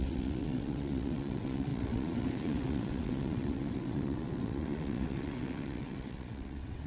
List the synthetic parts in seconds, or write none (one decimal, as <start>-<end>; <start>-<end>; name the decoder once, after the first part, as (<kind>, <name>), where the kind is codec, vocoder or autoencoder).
0.0-6.9 (vocoder, WaveNeXt)